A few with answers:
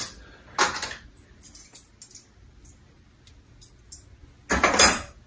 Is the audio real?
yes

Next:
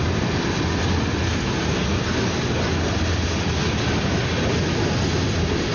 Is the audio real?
yes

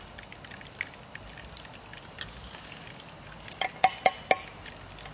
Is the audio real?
yes